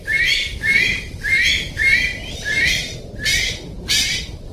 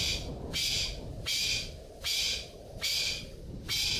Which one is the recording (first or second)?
second